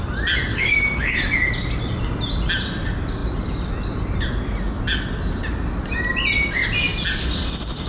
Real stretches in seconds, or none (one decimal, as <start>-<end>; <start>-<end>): 0.0-0.5; 1.2-7.9